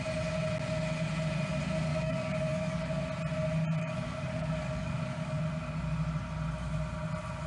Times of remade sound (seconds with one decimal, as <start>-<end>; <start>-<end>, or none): 1.9-3.0; 3.8-5.4